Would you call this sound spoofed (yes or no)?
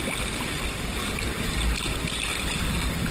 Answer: no